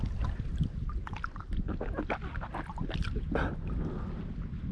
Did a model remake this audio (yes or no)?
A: no